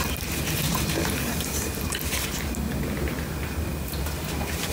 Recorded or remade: recorded